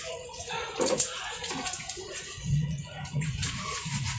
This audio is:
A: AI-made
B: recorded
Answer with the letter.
A